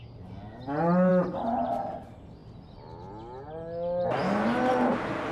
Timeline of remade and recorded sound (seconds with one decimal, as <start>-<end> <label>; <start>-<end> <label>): 0.0-5.3 recorded